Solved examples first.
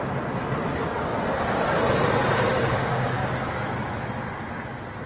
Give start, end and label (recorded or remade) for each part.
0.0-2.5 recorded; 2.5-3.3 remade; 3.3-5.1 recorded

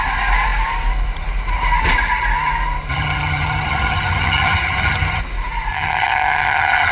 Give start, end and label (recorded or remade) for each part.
0.0-2.9 recorded; 2.9-5.2 remade; 5.2-5.7 recorded; 5.7-6.9 remade